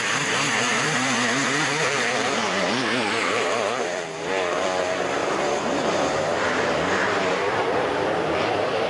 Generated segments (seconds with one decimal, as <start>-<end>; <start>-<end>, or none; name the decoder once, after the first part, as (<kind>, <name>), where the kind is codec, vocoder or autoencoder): 0.7-4.3 (vocoder, BigVGAN v2); 5.2-8.9